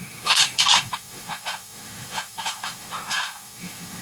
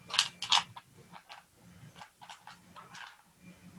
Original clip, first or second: second